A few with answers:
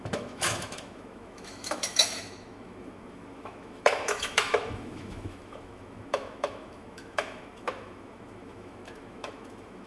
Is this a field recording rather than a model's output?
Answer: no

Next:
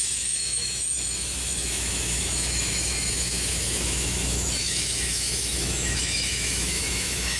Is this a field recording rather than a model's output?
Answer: no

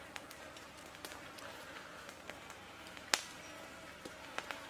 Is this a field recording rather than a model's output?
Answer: yes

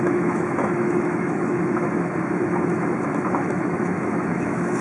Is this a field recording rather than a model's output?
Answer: no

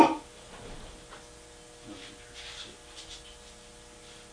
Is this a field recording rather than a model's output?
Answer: yes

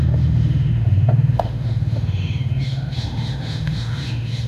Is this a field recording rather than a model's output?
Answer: no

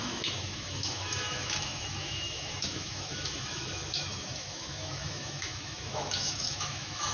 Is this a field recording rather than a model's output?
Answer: no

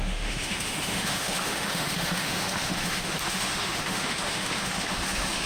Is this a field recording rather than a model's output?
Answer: no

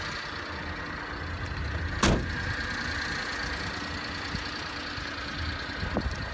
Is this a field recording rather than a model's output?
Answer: yes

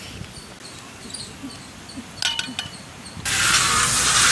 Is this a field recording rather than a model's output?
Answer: yes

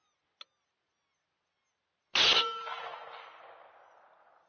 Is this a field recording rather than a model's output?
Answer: yes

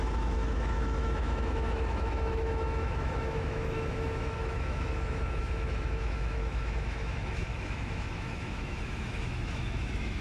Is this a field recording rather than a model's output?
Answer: no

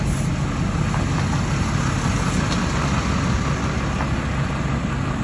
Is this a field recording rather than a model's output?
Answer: yes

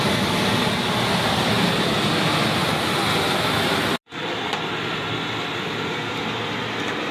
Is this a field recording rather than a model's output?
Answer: yes